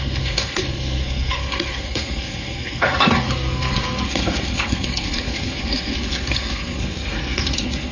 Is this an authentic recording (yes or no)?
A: no